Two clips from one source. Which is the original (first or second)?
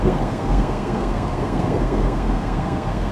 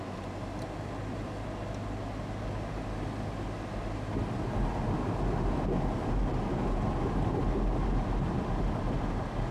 second